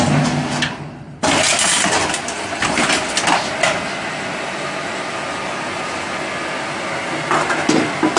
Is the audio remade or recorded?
recorded